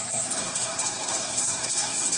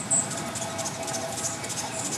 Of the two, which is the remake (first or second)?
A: first